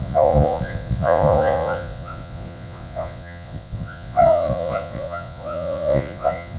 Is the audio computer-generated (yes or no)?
yes